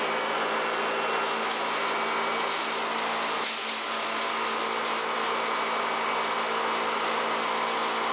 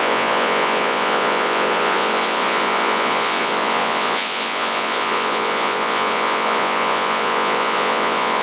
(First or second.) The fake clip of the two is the second